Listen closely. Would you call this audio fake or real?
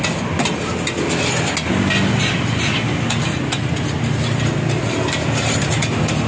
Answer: real